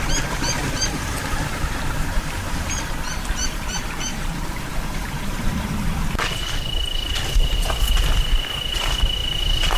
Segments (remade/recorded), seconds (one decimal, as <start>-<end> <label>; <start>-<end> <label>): 0.0-0.6 recorded; 0.6-5.8 remade; 5.8-9.8 recorded